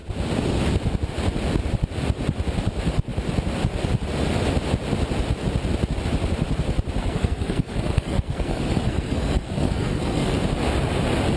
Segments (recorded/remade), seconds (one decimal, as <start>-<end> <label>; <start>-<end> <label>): 0.0-7.0 recorded; 7.0-10.4 remade; 10.4-11.4 recorded